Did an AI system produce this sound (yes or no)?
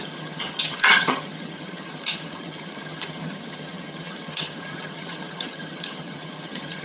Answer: yes